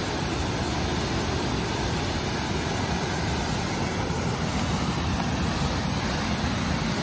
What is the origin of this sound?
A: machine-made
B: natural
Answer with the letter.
B